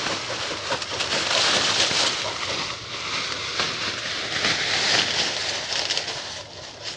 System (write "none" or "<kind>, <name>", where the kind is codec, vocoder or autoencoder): none